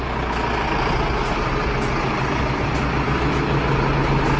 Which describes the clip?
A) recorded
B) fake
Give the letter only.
A